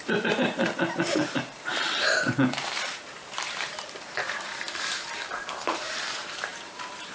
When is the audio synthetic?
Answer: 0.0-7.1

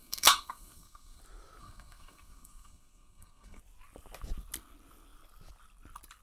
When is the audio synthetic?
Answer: 0.0-1.2; 1.6-3.6

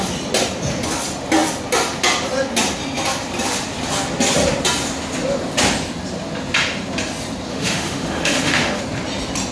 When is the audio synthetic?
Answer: 7.5-8.8

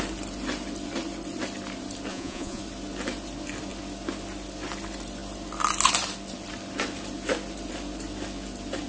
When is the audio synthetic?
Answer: 2.1-2.6

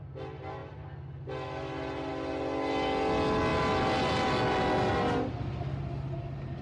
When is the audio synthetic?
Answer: none